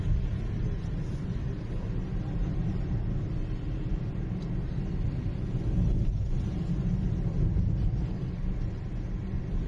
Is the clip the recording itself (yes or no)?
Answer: yes